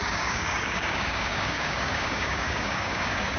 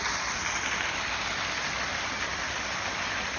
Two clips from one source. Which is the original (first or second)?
second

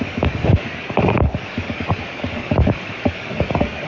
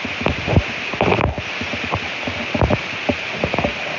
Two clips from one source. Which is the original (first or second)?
second